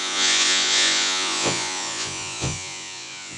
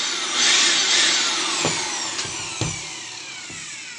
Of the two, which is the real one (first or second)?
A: second